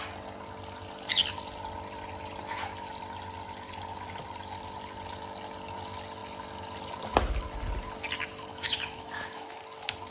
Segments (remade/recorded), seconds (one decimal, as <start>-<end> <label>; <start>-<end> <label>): 0.0-8.5 recorded; 8.5-9.6 remade; 9.6-10.1 recorded